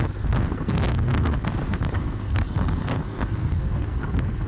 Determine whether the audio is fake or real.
fake